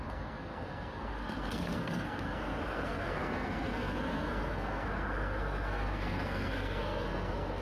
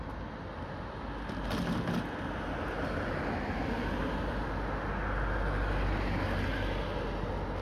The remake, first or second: first